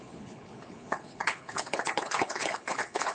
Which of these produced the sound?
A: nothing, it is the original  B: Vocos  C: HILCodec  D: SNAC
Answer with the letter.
C